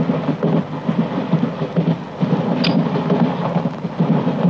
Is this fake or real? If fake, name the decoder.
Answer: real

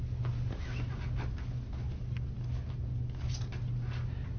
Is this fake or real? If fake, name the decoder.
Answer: real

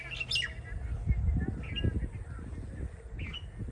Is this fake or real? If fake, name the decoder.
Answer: real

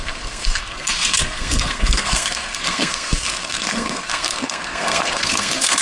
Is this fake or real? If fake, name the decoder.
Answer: fake, codec, SNAC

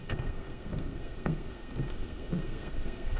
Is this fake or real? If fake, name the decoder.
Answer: fake, codec, SNAC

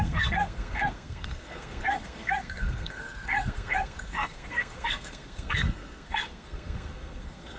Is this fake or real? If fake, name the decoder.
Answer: fake, codec, SNAC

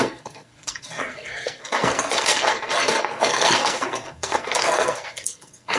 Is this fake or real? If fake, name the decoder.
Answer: fake, codec, SNAC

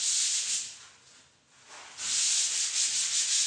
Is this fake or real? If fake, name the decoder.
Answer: real